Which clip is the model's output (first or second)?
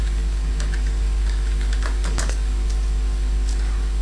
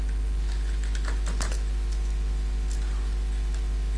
first